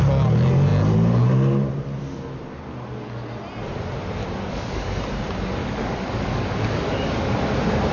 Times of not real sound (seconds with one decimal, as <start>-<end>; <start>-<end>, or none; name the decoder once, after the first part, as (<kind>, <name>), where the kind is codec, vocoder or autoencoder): 4.2-5.0 (codec, DAC); 5.6-7.3